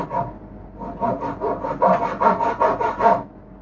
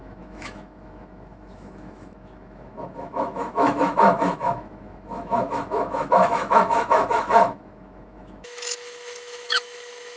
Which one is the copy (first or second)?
second